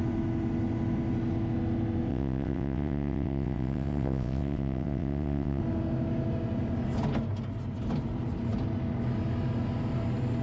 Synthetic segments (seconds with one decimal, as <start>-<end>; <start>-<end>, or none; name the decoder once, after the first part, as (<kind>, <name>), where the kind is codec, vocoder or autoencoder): 2.1-5.6 (vocoder, WaveNeXt)